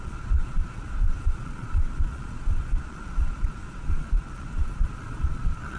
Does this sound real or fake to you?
fake